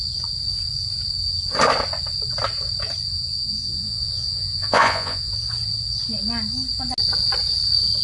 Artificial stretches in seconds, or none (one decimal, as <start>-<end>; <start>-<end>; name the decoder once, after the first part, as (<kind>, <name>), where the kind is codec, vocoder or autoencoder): 3.1-5.3 (vocoder, Vocos)